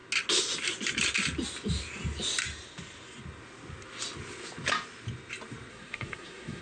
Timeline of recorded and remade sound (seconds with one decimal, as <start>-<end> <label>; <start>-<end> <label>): 0.0-5.7 recorded; 5.7-6.6 remade